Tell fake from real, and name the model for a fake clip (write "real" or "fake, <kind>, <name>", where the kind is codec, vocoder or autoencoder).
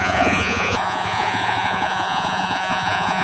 fake, vocoder, Vocos